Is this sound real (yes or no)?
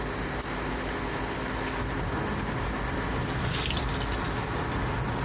yes